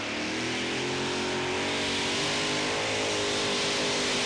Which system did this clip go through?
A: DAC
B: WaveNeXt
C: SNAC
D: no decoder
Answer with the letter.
D